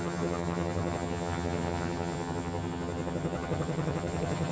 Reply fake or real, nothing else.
fake